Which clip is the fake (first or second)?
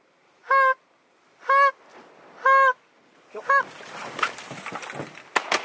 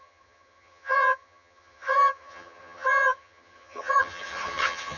second